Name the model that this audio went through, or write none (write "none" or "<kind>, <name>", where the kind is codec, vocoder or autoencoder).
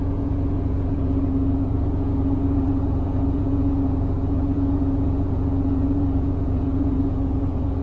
vocoder, Vocos